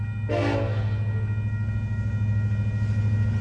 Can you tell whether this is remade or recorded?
recorded